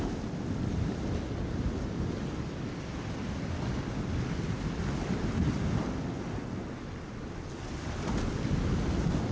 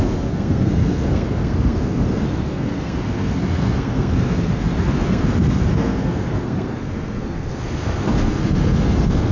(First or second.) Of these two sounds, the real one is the first